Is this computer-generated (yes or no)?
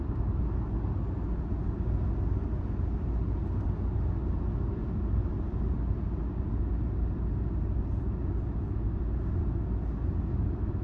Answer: no